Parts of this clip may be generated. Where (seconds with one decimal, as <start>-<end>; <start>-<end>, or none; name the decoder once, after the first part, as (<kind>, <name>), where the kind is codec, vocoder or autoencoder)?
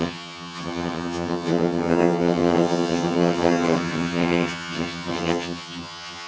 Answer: 0.0-6.3 (vocoder, HiFi-GAN)